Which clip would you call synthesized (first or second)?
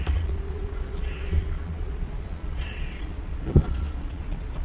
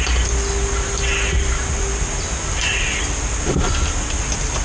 first